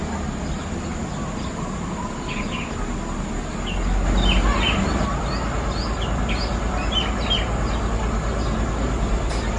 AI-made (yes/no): no